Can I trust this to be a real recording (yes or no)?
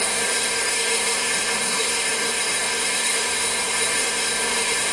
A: no